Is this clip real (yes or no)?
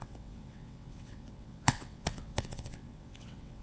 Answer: no